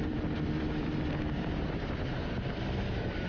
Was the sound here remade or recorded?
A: remade